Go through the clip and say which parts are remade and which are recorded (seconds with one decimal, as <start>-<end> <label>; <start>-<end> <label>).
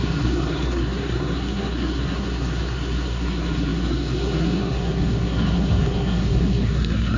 0.0-7.2 remade